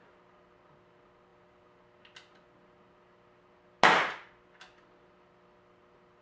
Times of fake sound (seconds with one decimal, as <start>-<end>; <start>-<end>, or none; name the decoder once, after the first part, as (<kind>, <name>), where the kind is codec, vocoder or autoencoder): none